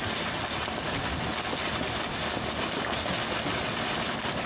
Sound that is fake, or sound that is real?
real